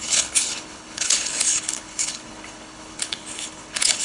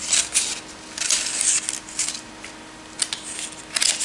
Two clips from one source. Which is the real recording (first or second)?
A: second